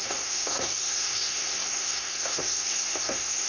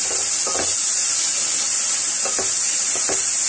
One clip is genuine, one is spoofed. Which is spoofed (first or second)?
first